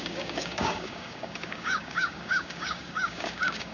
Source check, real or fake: fake